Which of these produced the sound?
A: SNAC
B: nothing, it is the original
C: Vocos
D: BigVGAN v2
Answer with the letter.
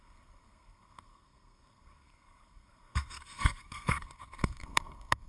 A